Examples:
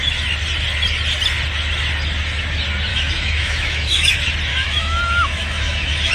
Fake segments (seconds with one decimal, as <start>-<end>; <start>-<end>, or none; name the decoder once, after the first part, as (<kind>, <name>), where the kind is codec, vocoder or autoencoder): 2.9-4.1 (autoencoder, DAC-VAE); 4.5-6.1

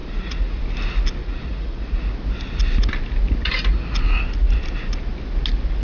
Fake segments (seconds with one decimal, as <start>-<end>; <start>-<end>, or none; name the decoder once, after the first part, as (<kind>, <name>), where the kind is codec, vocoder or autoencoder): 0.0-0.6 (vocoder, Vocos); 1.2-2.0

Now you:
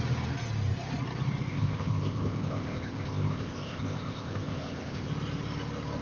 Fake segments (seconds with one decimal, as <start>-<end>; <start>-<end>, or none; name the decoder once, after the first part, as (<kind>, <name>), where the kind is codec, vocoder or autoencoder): 1.5-5.1 (codec, ZipCodec)